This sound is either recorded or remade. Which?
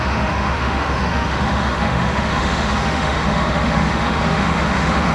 remade